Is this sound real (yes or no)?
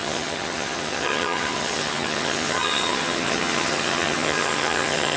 no